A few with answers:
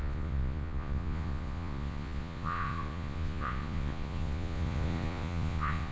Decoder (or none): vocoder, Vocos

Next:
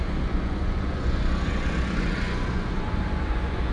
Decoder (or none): vocoder, Vocos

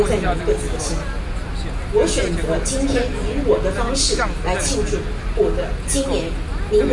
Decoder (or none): none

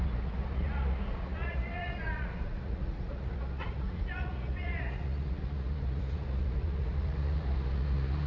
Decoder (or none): vocoder, Vocos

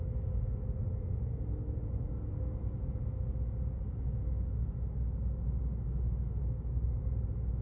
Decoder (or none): none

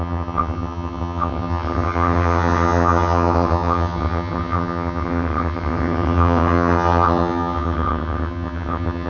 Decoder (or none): vocoder, HiFi-GAN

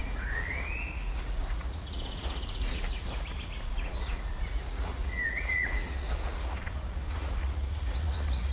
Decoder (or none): vocoder, Vocos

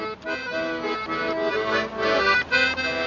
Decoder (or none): none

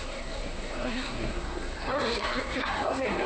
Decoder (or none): codec, SNAC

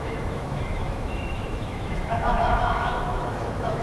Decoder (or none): autoencoder, DAC-VAE